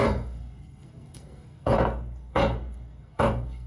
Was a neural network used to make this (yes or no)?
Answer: yes